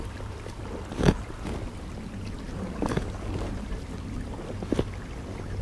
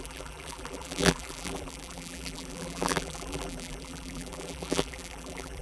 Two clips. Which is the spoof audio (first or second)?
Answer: second